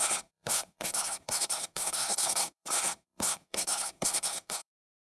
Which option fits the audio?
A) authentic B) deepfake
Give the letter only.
B